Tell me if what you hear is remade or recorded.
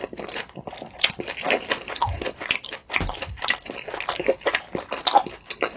recorded